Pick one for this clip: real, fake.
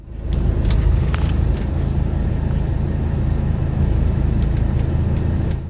real